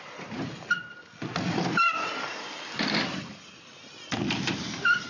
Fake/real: real